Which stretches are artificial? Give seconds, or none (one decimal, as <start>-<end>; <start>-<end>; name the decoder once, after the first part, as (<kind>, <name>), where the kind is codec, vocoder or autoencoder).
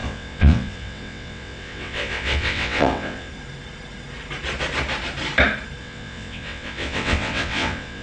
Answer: 0.0-3.3 (vocoder, WaveNeXt); 5.8-8.0